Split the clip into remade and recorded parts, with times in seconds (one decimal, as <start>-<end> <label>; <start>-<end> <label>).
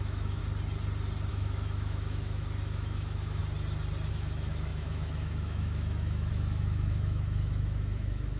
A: 0.0-0.4 remade; 0.4-1.3 recorded; 1.3-3.4 remade; 3.4-4.1 recorded; 4.1-8.4 remade